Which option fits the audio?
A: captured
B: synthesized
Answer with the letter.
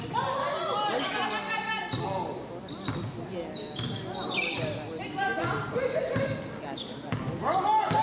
A